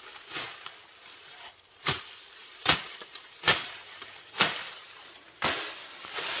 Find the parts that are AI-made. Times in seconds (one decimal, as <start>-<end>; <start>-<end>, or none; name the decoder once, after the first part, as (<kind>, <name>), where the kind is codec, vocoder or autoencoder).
1.3-5.1 (vocoder, BigVGAN v2)